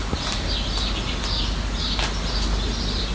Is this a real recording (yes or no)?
yes